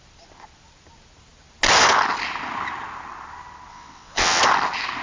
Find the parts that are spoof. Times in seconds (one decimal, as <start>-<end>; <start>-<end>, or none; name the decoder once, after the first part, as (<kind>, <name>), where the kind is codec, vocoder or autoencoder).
3.7-4.4 (vocoder, WaveNeXt)